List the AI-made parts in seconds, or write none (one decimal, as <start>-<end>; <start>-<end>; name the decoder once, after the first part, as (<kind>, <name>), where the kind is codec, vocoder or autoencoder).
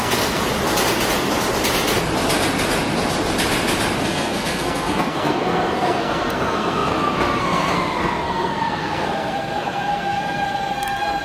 0.0-0.4 (codec, SNAC); 4.0-11.2